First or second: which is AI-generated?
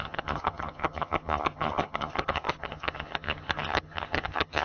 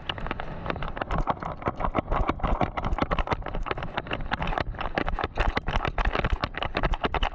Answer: first